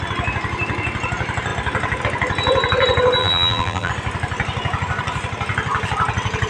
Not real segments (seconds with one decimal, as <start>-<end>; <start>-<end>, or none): 3.2-3.9